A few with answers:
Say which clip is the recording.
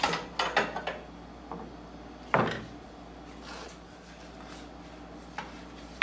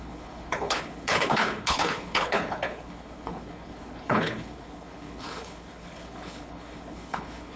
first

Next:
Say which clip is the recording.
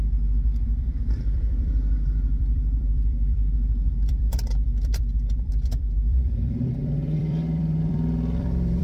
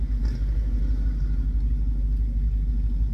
second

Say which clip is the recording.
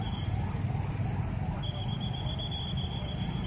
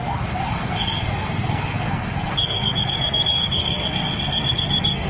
first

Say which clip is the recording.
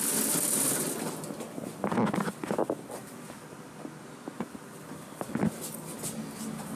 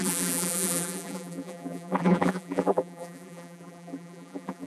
first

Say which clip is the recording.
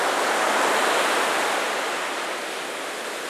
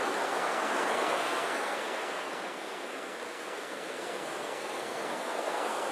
first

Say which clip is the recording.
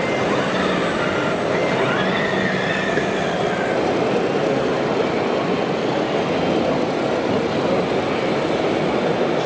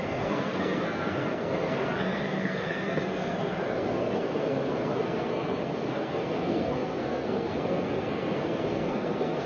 first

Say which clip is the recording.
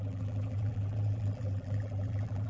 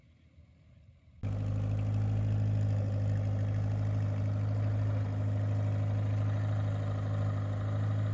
second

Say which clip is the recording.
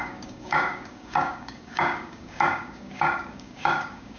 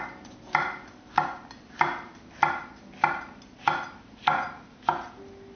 second